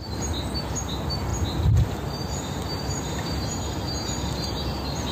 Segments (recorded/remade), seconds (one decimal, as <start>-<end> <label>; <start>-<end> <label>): 0.0-5.1 recorded